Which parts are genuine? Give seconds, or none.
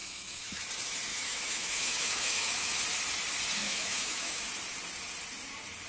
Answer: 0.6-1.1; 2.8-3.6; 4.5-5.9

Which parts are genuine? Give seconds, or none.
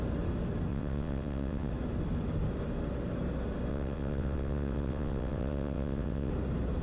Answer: 0.0-0.7; 1.7-3.7; 6.3-6.8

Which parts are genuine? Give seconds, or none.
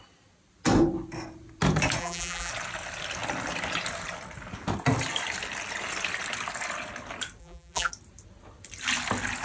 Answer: 0.0-2.0; 2.5-7.4; 7.9-9.4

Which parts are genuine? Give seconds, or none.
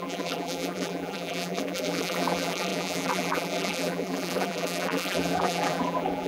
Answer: none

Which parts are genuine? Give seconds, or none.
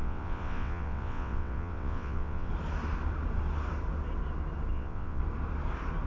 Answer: 2.5-4.7; 5.2-6.1